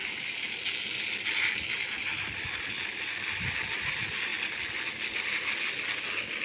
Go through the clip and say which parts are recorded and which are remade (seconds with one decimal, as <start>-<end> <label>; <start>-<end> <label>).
0.0-6.4 recorded